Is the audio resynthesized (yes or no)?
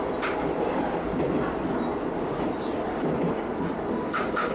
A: no